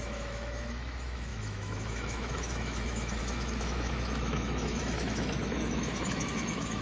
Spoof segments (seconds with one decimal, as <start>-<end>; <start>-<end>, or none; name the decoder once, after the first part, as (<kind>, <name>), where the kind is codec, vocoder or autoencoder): 0.0-6.8 (autoencoder, DAC-VAE)